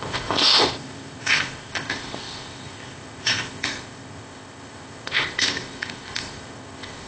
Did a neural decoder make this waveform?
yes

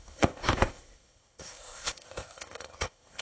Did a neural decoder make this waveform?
yes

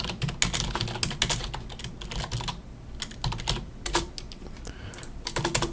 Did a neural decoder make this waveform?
no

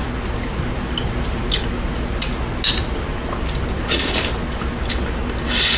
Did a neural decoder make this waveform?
no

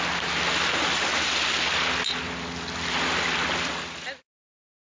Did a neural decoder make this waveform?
no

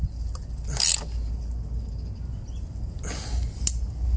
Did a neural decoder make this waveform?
no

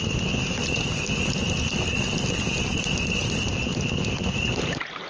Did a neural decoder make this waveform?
no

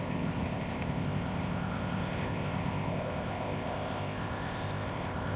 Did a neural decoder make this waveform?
yes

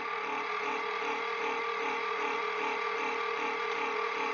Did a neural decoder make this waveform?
no